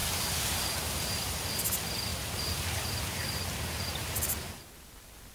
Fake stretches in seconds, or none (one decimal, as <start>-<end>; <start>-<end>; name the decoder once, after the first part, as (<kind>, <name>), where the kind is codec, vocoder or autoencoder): 0.0-1.5 (vocoder, BigVGAN v2); 2.1-4.8